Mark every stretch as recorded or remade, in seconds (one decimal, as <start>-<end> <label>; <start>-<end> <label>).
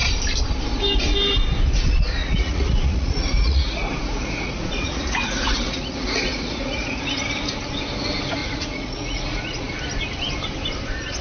0.0-2.2 recorded; 2.2-7.0 remade; 7.0-8.4 recorded; 8.4-9.7 remade; 9.7-11.2 recorded